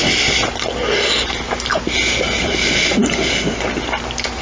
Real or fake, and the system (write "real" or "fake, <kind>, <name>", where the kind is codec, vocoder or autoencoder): real